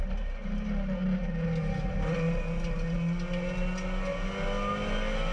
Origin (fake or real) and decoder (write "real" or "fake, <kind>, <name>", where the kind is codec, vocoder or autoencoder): real